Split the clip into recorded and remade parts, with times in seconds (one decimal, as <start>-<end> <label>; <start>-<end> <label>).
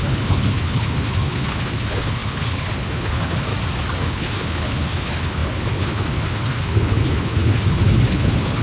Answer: 0.0-3.5 remade; 3.5-4.0 recorded; 4.0-8.6 remade